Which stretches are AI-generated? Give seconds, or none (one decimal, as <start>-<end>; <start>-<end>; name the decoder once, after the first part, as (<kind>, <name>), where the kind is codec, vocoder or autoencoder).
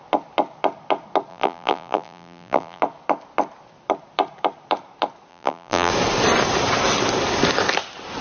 1.3-2.8 (vocoder, BigVGAN v2); 5.3-5.9